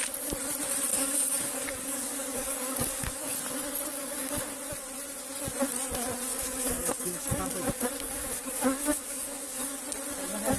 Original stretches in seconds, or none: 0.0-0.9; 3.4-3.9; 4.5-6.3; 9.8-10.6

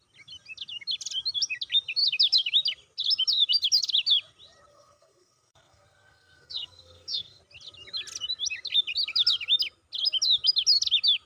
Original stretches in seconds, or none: 0.0-4.7; 7.4-11.3